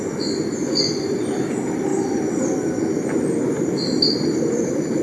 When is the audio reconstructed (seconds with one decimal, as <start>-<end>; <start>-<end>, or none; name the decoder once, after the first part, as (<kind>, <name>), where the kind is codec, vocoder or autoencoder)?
0.6-1.2 (vocoder, Vocos)